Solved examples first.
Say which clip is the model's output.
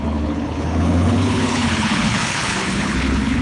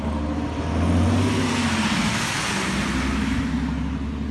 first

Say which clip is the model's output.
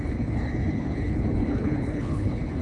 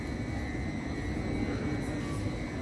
first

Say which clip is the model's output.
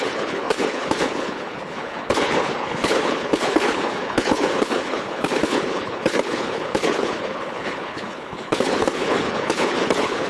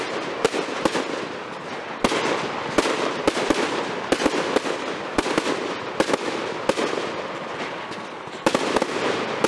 first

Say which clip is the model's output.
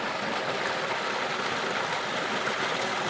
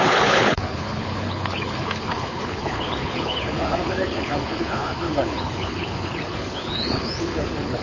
second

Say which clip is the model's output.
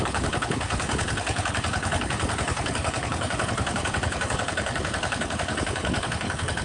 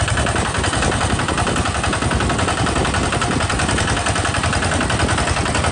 first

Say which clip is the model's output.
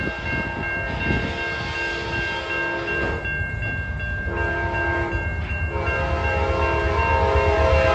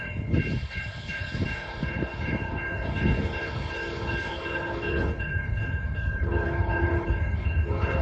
second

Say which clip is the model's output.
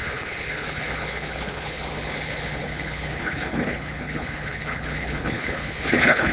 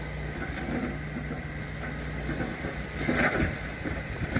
first